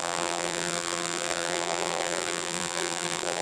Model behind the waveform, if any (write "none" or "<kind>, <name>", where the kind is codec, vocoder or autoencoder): vocoder, BigVGAN v2